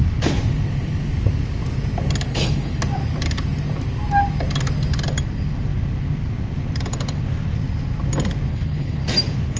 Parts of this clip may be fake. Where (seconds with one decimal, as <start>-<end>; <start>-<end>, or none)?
2.3-2.8; 8.5-9.0